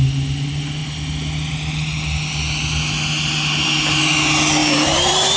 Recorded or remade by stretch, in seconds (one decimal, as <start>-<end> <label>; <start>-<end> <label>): 0.0-4.6 recorded; 4.6-5.4 remade